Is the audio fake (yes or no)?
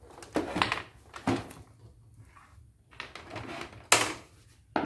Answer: no